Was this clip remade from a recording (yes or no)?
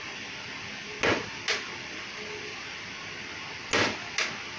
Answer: no